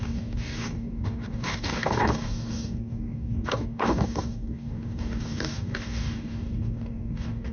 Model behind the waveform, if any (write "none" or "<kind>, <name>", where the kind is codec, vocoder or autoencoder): codec, DAC